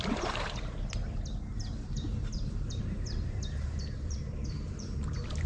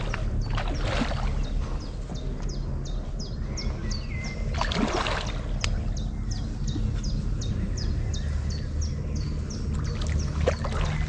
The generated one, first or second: first